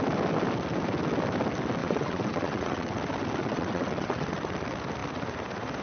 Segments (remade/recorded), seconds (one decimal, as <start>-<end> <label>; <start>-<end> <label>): 0.0-1.8 recorded; 1.8-3.0 remade; 3.0-3.4 recorded; 3.4-4.3 remade; 4.3-5.8 recorded